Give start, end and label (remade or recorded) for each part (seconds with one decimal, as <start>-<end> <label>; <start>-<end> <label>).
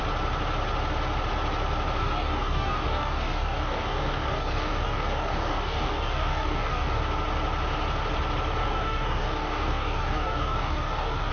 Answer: 0.0-2.0 recorded; 2.0-7.0 remade; 7.0-8.6 recorded; 8.6-11.3 remade